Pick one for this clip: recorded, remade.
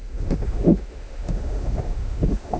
remade